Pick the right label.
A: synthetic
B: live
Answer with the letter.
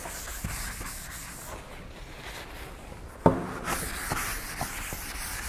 B